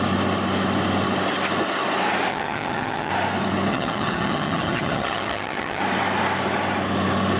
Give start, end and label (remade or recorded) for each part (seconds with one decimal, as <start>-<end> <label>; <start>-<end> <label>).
0.0-2.3 recorded; 2.3-3.1 remade; 3.1-3.7 recorded; 3.7-5.8 remade; 5.8-7.4 recorded